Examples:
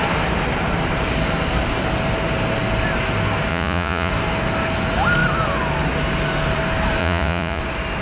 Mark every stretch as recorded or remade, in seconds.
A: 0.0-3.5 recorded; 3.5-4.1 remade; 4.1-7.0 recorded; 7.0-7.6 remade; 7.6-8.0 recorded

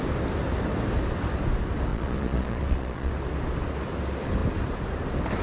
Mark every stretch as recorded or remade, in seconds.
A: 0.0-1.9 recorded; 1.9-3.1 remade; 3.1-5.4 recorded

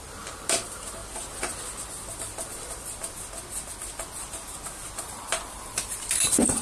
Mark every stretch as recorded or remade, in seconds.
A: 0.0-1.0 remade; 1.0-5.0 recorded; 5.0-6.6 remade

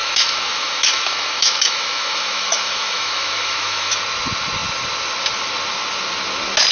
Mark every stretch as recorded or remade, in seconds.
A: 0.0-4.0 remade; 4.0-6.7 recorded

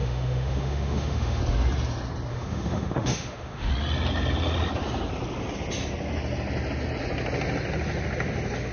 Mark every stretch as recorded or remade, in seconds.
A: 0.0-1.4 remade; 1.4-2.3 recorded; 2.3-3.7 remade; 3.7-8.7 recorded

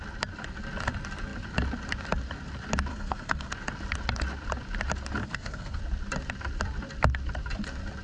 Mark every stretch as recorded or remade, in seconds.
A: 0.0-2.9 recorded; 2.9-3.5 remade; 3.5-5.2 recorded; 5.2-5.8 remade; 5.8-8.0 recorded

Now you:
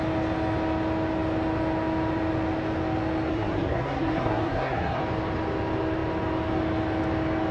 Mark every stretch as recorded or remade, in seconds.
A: 0.0-3.3 recorded; 3.3-5.0 remade; 5.0-7.5 recorded